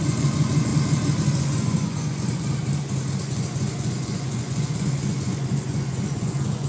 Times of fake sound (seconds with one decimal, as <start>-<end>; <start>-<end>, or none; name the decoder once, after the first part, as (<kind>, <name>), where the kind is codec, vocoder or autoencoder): 0.0-0.7 (vocoder, Vocos); 1.4-2.6; 3.2-6.7